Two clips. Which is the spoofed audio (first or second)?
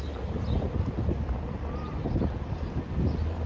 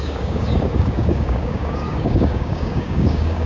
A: second